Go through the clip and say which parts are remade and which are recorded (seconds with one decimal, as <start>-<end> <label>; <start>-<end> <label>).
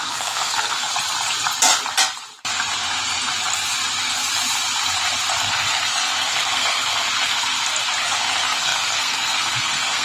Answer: 0.0-0.9 remade; 0.9-5.4 recorded; 5.4-7.5 remade; 7.5-8.0 recorded; 8.0-10.0 remade